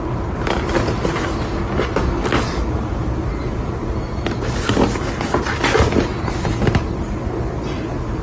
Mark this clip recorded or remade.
recorded